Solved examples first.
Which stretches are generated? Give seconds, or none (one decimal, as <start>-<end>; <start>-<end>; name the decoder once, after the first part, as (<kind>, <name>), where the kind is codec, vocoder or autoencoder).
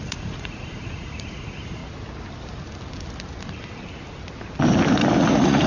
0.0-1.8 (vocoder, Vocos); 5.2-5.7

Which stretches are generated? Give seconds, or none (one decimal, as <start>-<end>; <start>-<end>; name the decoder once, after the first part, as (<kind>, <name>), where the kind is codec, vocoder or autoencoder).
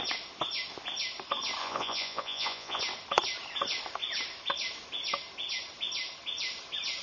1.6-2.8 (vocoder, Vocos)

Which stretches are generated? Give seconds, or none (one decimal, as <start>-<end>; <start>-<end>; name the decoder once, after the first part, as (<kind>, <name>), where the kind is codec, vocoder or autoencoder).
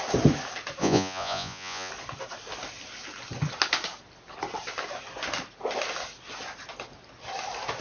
0.8-1.9 (vocoder, Vocos)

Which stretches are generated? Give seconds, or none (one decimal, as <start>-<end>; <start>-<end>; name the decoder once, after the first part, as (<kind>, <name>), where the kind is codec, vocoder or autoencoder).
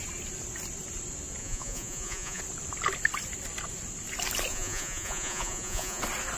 1.4-2.4 (vocoder, Vocos); 4.5-6.0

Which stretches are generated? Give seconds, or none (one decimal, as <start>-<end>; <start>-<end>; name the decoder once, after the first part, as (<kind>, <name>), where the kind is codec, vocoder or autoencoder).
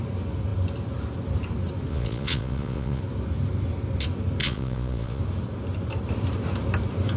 1.9-3.0 (vocoder, Vocos); 4.4-5.2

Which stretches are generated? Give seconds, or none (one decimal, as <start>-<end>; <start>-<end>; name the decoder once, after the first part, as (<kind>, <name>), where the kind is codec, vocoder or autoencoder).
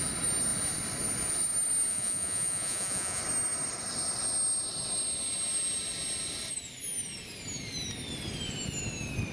1.9-3.2 (vocoder, Vocos)